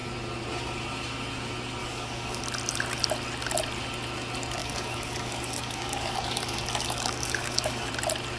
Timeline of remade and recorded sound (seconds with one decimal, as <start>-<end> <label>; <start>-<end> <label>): 0.0-1.8 recorded; 1.8-2.4 remade; 2.4-4.6 recorded; 4.6-7.9 remade; 7.9-8.4 recorded